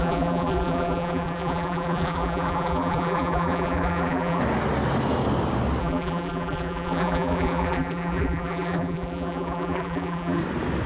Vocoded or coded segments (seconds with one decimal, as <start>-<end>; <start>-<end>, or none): 0.0-4.4; 5.8-10.4